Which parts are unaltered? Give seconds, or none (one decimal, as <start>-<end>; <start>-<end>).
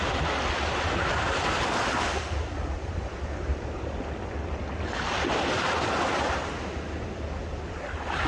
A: 0.0-3.5; 4.7-8.3